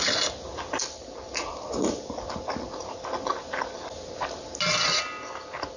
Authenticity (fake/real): real